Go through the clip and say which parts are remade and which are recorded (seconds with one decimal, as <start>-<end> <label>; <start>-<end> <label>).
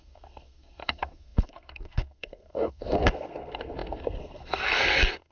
0.0-5.3 remade